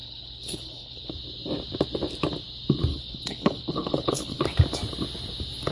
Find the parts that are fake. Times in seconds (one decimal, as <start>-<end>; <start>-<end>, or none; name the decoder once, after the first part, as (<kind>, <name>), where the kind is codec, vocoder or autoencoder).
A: 0.0-1.1 (codec, HILCodec); 2.9-4.4